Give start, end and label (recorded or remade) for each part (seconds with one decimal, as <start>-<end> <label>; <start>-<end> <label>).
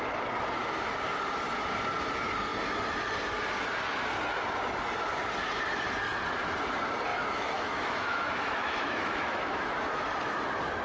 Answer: 0.0-7.1 recorded; 7.1-10.0 remade; 10.0-10.8 recorded